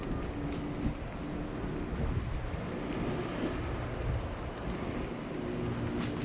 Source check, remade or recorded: recorded